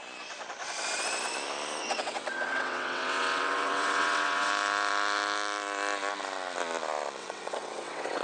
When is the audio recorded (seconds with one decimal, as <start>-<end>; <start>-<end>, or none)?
0.0-1.8; 4.5-7.2